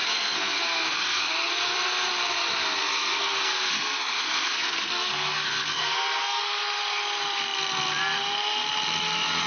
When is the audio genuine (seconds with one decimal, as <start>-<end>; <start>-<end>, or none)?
1.3-2.9; 6.4-9.5